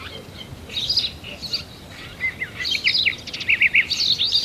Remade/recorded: recorded